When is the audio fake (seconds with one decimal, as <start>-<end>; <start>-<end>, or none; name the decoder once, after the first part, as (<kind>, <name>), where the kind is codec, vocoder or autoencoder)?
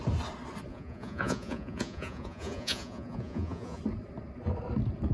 0.7-3.8 (vocoder, Vocos)